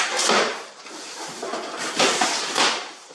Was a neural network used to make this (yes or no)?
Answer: yes